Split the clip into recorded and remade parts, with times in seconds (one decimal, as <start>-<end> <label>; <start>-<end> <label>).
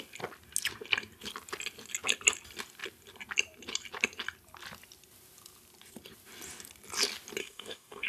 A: 0.0-7.4 recorded; 7.4-8.1 remade